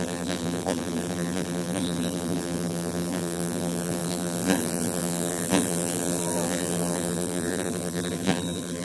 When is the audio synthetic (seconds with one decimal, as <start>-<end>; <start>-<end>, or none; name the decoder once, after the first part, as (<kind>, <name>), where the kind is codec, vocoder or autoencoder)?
0.0-8.8 (vocoder, BigVGAN v2)